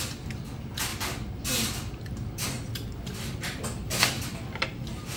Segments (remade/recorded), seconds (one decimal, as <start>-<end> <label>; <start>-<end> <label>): 0.0-5.2 recorded